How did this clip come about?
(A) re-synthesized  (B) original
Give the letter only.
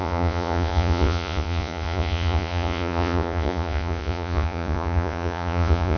A